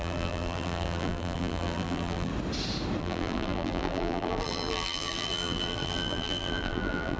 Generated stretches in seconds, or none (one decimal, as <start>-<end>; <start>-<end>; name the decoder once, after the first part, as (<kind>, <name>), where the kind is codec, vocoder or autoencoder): 0.0-2.3 (vocoder, BigVGAN v2); 3.0-7.2